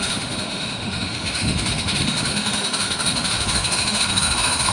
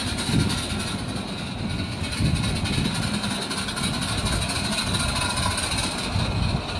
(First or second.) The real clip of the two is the second